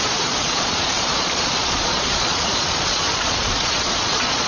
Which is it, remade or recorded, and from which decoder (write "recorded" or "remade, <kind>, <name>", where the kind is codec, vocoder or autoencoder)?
remade, vocoder, Vocos